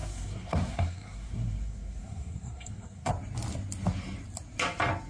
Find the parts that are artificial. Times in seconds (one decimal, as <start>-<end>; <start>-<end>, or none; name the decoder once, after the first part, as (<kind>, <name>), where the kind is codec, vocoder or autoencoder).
0.0-3.1 (codec, SNAC)